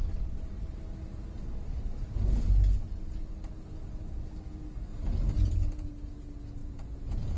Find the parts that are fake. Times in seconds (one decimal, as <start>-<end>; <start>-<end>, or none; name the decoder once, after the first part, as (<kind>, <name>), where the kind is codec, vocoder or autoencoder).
4.9-5.9 (vocoder, Vocos); 6.6-7.4